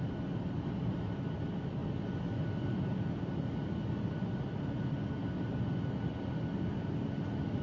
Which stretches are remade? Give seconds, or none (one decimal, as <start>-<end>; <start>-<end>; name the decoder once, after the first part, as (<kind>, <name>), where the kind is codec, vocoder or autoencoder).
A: none

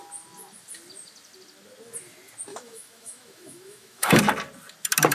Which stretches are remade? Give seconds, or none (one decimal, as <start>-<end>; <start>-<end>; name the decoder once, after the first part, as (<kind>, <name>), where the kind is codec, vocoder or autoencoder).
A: 2.5-4.2 (autoencoder, DAC-VAE)

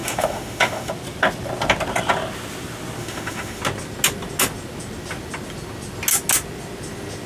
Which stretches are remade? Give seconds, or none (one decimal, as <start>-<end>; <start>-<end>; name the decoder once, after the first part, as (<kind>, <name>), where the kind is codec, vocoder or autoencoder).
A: 0.0-0.9 (autoencoder, DAC-VAE); 3.0-3.6

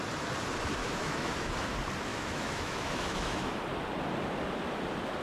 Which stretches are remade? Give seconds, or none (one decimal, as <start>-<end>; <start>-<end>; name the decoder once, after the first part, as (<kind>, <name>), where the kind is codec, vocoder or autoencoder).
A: 0.8-1.5 (autoencoder, DAC-VAE); 2.1-3.6

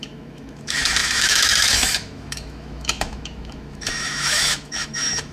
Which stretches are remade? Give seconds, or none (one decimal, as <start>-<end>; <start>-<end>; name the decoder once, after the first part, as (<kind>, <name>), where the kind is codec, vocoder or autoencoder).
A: 0.0-5.3 (autoencoder, DAC-VAE)

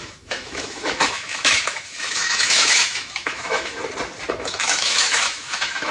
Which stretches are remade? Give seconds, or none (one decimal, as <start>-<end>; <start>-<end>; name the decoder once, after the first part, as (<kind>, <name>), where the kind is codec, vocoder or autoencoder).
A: 0.0-3.8 (autoencoder, DAC-VAE); 4.3-5.9